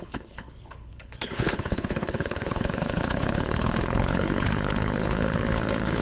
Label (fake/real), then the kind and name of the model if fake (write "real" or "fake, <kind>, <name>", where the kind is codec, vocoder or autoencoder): fake, codec, HILCodec